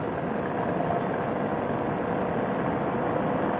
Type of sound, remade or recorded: recorded